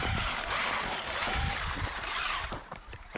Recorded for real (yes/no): no